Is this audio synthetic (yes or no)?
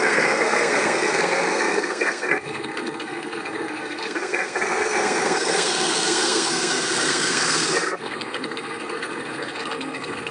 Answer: yes